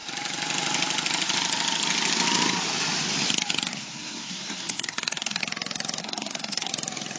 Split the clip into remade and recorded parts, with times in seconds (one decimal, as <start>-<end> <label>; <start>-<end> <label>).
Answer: 0.0-3.7 recorded; 3.7-5.4 remade; 5.4-6.0 recorded; 6.0-6.7 remade; 6.7-7.2 recorded